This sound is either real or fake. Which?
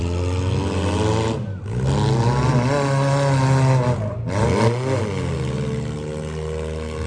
real